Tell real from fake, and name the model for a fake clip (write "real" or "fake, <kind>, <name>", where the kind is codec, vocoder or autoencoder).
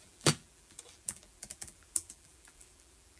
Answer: fake, vocoder, BigVGAN v2